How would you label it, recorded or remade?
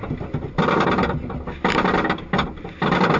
recorded